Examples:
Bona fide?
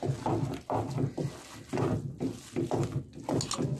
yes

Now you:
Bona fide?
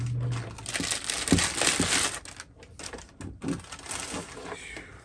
yes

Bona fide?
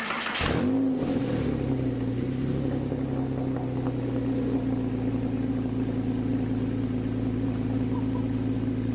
yes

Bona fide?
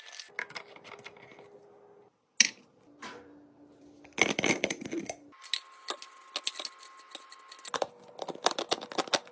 yes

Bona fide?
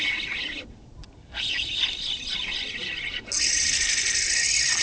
yes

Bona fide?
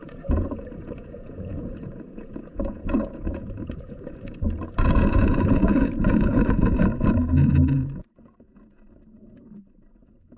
no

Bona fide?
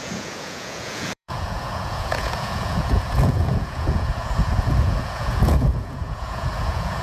no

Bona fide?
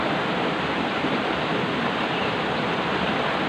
yes